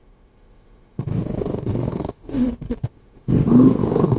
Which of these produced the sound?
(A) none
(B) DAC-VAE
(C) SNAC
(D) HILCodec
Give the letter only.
B